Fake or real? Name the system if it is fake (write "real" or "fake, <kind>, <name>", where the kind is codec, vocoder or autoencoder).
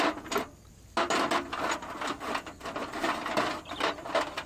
real